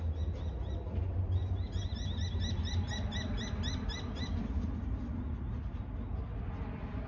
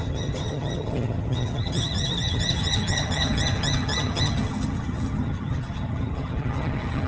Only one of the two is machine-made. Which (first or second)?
second